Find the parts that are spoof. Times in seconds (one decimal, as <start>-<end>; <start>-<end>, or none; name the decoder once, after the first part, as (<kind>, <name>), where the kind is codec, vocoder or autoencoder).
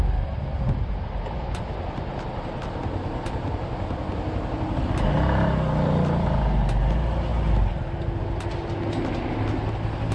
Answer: none